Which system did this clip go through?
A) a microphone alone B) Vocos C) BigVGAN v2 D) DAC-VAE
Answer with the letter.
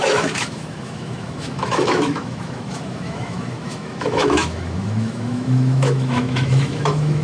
D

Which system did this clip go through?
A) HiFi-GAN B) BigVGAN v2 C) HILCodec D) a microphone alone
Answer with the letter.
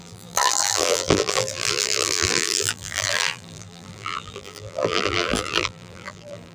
B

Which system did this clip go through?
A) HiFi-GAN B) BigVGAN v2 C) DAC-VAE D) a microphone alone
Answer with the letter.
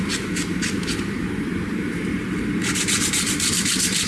B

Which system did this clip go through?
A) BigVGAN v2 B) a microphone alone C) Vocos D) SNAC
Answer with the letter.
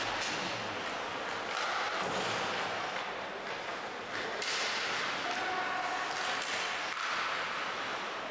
B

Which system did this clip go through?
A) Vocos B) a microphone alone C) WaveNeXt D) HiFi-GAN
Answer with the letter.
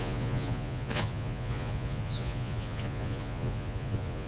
A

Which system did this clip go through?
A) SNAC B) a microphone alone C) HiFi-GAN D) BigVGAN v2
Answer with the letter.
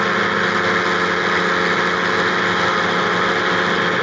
B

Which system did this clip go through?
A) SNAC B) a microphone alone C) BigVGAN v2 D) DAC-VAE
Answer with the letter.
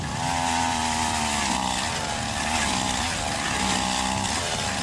B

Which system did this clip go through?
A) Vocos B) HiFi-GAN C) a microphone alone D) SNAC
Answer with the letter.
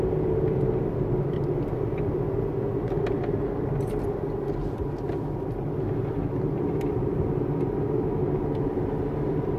C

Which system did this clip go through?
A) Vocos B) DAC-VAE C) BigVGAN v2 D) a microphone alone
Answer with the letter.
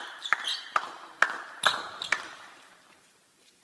C